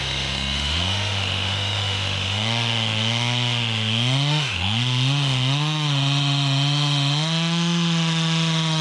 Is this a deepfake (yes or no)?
yes